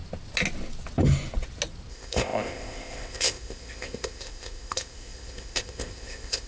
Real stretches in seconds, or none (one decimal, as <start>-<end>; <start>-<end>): 0.0-1.9